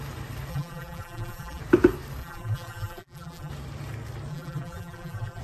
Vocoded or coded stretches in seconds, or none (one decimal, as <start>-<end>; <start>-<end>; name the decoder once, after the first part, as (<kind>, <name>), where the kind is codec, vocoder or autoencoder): 0.5-1.6 (vocoder, BigVGAN v2); 2.2-3.5; 4.3-5.4